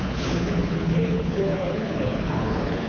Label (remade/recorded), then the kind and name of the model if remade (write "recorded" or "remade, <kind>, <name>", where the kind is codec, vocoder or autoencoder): remade, codec, HILCodec